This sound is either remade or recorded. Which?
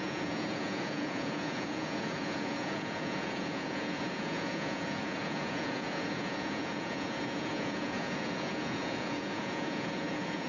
remade